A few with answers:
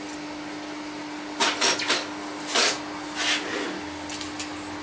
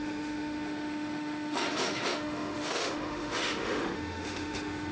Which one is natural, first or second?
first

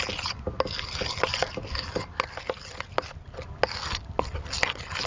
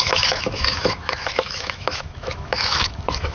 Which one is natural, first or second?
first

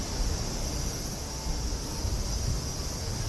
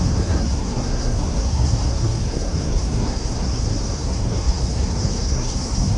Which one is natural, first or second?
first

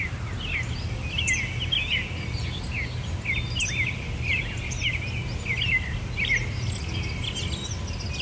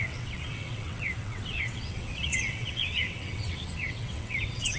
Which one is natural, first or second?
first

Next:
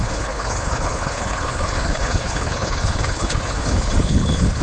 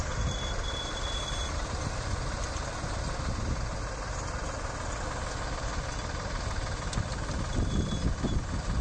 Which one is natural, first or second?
second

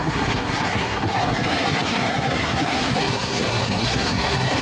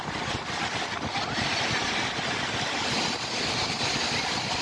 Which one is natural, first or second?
second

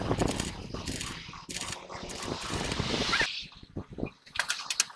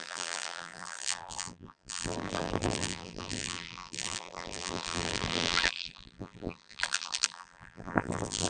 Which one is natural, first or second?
first